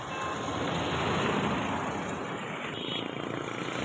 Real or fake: real